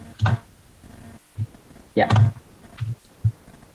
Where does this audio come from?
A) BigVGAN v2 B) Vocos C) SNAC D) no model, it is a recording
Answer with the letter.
D